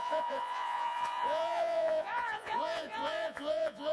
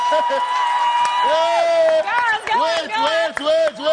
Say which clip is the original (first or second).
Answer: second